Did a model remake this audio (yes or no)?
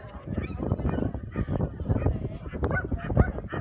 no